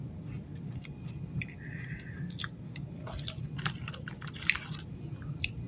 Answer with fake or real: real